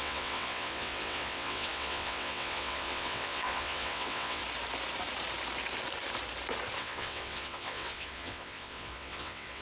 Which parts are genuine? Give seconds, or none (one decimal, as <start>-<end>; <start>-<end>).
4.4-6.8